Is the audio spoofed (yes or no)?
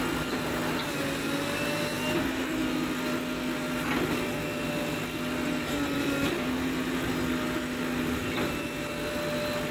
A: no